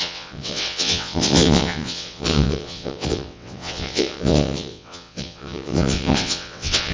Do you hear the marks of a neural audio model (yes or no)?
yes